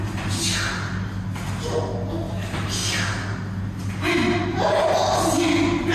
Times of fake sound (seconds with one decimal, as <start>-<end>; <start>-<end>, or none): none